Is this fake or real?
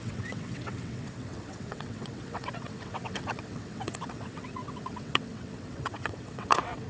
fake